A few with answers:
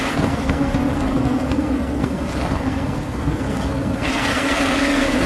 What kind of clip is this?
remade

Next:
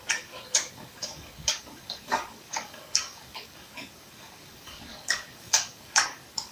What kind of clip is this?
remade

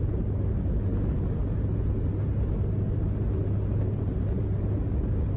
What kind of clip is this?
recorded